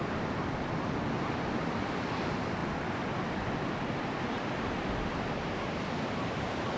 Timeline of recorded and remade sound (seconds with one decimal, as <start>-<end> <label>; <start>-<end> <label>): 0.0-6.8 recorded